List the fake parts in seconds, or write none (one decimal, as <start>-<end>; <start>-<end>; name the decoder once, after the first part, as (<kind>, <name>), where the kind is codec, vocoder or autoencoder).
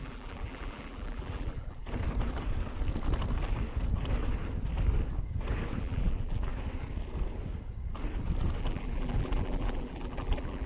0.0-1.8 (vocoder, BigVGAN v2); 5.8-6.5; 8.6-10.7